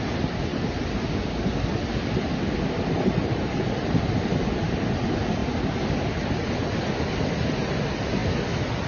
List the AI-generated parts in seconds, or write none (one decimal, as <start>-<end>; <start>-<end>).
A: 1.5-4.0